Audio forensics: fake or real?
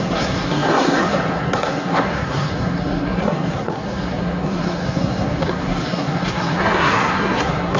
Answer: fake